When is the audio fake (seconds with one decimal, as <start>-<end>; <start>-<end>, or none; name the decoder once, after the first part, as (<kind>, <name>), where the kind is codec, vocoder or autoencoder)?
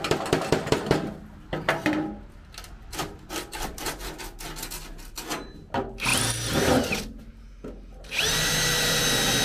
none